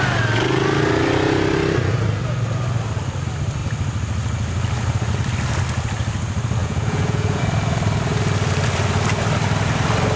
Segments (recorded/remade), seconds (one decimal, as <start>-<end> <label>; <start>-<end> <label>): 0.0-6.6 recorded; 6.6-7.4 remade; 7.4-10.2 recorded